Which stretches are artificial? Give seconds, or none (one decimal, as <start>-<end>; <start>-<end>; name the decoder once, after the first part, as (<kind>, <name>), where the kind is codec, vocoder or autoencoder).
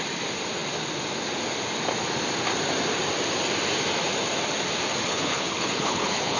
5.1-6.4 (codec, HILCodec)